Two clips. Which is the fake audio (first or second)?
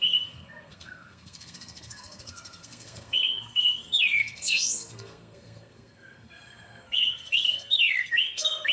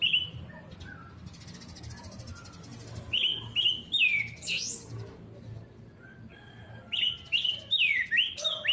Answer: first